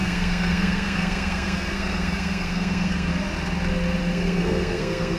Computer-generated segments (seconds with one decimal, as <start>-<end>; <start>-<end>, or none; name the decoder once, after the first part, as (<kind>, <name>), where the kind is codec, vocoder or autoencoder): 0.0-3.1 (codec, SNAC); 4.1-5.2